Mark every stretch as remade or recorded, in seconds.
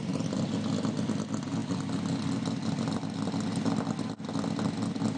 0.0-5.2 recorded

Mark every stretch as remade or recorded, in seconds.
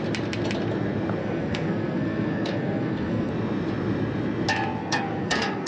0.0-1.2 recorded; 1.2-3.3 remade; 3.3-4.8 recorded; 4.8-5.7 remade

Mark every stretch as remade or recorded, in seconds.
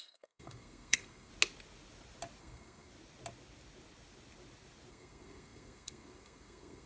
0.0-1.3 remade; 1.3-2.4 recorded; 2.4-2.9 remade; 2.9-4.9 recorded; 4.9-6.9 remade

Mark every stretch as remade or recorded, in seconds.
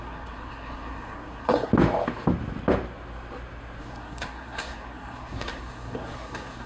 0.0-1.7 remade; 1.7-3.8 recorded; 3.8-6.7 remade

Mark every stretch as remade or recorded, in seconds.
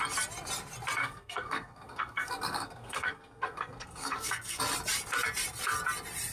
0.0-1.0 recorded; 1.0-4.6 remade; 4.6-6.3 recorded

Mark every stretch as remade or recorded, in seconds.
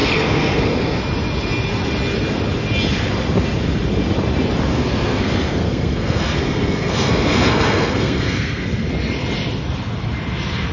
0.0-1.0 remade; 1.0-4.7 recorded; 4.7-8.9 remade; 8.9-10.7 recorded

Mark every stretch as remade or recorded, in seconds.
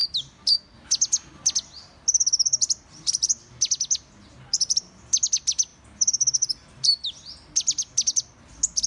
0.0-8.9 recorded